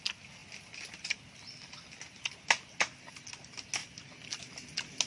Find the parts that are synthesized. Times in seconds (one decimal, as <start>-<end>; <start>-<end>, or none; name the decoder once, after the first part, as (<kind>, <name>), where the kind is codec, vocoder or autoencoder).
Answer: none